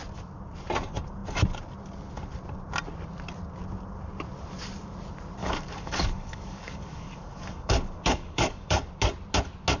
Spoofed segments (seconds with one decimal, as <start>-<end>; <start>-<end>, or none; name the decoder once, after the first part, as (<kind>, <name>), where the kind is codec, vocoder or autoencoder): 5.4-8.9 (codec, DAC)